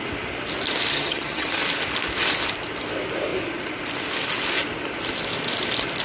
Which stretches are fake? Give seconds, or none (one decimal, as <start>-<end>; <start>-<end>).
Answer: 0.9-1.5